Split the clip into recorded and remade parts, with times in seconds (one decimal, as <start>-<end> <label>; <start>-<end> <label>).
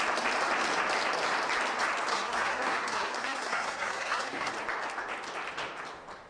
0.0-2.1 recorded; 2.1-4.5 remade; 4.5-6.3 recorded